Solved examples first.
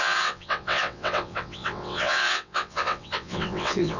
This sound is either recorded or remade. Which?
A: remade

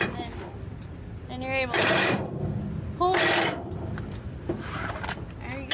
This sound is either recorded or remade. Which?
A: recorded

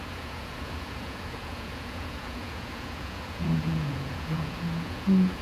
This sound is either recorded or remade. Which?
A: remade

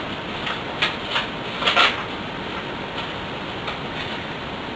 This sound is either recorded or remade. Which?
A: recorded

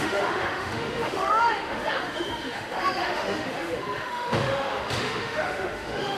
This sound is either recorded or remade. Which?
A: remade